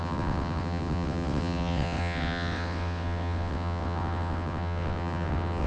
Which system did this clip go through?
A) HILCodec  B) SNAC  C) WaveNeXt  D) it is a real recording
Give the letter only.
C